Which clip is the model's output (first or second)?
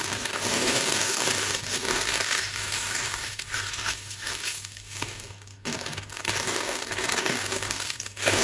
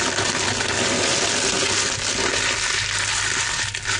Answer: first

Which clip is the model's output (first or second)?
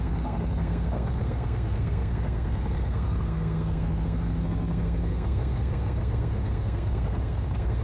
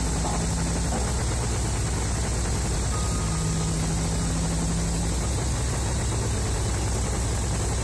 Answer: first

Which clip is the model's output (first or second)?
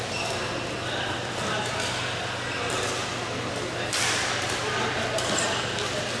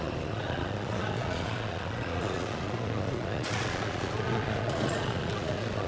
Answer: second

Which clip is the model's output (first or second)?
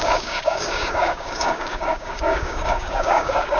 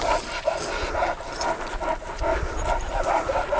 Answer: first